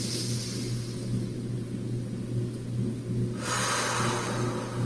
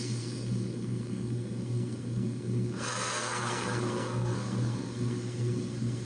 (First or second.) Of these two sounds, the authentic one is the first